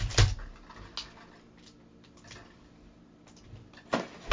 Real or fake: real